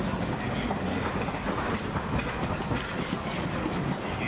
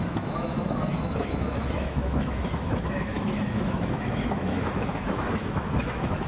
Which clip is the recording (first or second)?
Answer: first